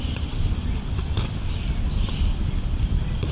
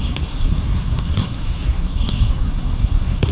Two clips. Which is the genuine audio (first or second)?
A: first